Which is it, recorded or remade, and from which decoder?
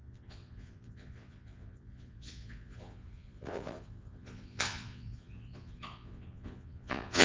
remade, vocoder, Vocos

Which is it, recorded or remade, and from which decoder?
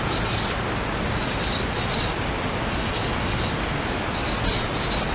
recorded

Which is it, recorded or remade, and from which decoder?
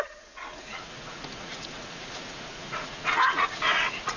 remade, vocoder, Vocos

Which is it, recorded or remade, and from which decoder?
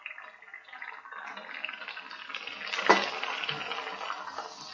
recorded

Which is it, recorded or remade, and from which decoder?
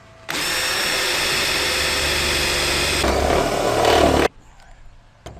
recorded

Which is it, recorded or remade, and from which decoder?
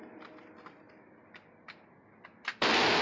recorded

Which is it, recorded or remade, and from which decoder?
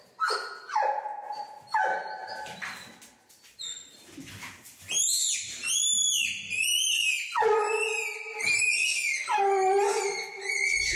recorded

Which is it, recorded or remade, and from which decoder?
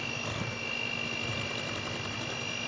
recorded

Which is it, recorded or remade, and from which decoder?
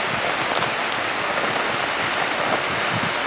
recorded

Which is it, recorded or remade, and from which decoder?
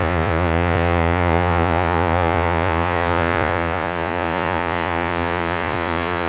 remade, vocoder, Vocos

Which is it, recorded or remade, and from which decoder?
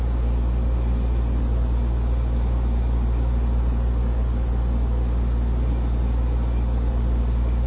recorded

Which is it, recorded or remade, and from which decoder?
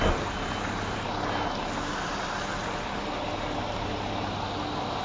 recorded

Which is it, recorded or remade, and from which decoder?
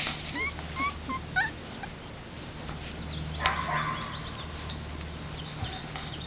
recorded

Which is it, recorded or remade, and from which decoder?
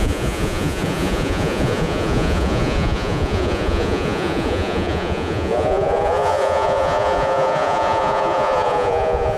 remade, vocoder, Vocos